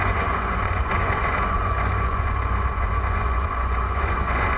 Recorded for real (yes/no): no